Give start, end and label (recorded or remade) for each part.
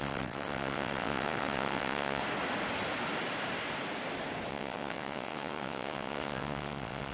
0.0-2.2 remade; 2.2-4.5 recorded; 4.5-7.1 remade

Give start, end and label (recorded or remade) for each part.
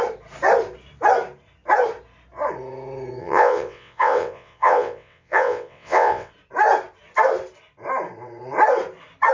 0.0-3.2 recorded; 3.2-6.3 remade; 6.3-9.3 recorded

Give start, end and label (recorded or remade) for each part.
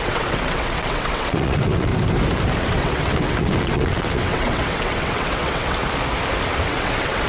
0.0-1.9 remade; 1.9-2.6 recorded; 2.6-5.8 remade; 5.8-6.5 recorded; 6.5-7.3 remade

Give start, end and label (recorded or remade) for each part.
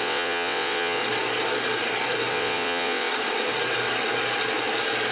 0.0-1.0 remade; 1.0-2.3 recorded; 2.3-3.1 remade; 3.1-5.1 recorded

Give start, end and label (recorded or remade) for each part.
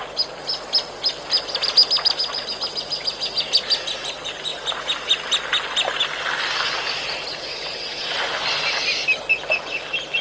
0.0-7.5 recorded; 7.5-8.1 remade; 8.1-10.2 recorded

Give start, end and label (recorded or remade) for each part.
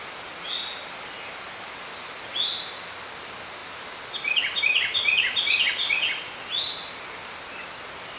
0.0-8.2 recorded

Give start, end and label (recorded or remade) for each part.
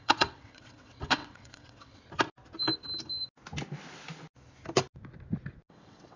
0.0-2.0 remade; 2.0-5.7 recorded; 5.7-6.2 remade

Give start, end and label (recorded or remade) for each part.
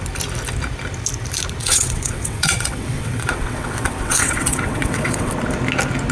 0.0-1.6 recorded; 1.6-5.3 remade; 5.3-6.1 recorded